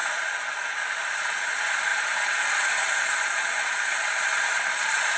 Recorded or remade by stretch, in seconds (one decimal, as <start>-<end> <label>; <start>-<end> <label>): 0.0-5.2 recorded